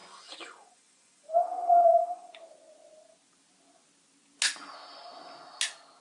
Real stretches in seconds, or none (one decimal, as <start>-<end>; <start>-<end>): 2.3-6.0